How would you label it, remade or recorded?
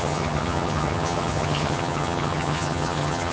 remade